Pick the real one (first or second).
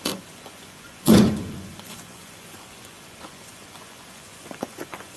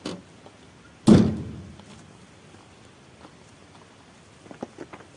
second